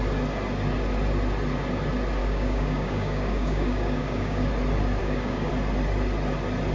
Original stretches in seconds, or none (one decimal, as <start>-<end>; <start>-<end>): 0.0-2.2; 4.5-5.0; 5.5-6.7